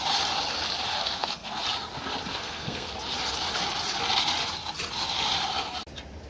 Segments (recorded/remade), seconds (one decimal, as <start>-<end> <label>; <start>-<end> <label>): 0.0-1.0 recorded; 1.0-1.6 remade; 1.6-2.3 recorded; 2.3-2.9 remade; 2.9-6.3 recorded